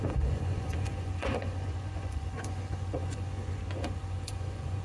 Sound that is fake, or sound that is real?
fake